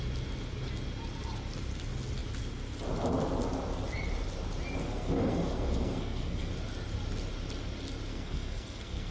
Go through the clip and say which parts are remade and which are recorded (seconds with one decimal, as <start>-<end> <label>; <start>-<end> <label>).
0.0-4.8 recorded; 4.8-6.5 remade; 6.5-8.1 recorded; 8.1-9.1 remade